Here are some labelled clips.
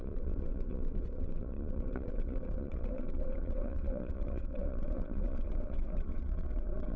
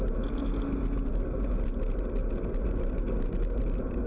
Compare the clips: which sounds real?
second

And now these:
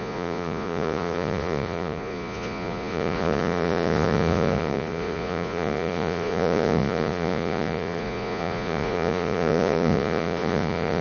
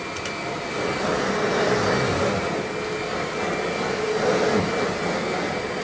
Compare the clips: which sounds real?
second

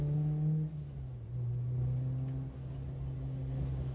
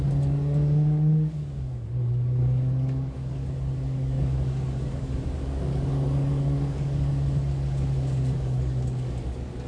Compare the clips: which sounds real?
first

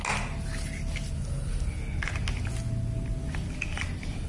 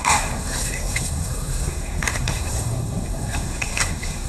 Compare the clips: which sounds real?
first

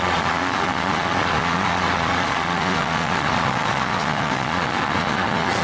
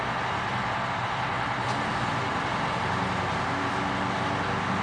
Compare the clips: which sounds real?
second